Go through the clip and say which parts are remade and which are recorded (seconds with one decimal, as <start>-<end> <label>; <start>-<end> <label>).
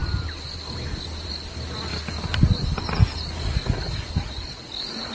0.0-5.1 recorded